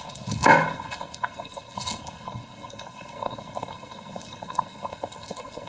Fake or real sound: fake